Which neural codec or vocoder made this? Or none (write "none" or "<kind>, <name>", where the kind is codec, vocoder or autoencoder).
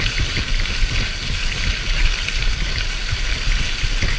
none